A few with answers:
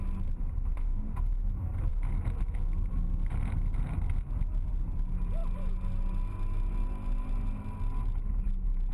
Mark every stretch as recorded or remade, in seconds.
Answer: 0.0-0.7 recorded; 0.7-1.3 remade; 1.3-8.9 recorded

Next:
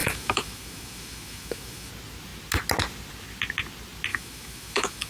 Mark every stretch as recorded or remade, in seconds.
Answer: 0.0-1.9 remade; 1.9-4.1 recorded; 4.1-5.1 remade

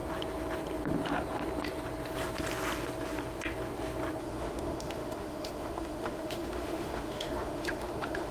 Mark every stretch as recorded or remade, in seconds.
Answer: 0.0-4.2 recorded; 4.2-8.3 remade

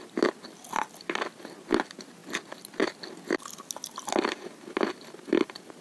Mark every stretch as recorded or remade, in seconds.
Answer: 0.0-5.8 recorded

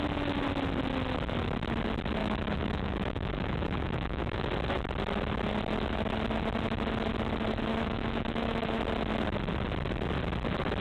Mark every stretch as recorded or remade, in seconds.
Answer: 0.0-2.2 recorded; 2.2-4.5 remade; 4.5-7.7 recorded; 7.7-8.7 remade; 8.7-10.8 recorded

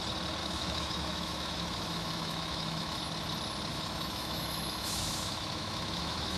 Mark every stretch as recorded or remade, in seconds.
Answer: 0.0-0.4 recorded; 0.4-3.0 remade; 3.0-3.7 recorded; 3.7-6.4 remade

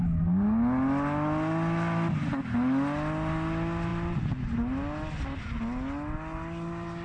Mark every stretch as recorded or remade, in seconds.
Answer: 0.0-7.0 recorded